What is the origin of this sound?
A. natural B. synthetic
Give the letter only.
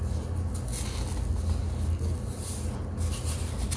A